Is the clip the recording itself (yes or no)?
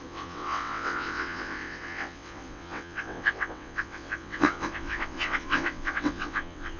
no